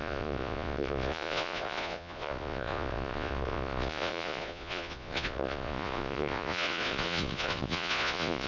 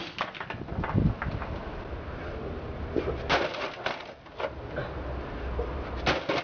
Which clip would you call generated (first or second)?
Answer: first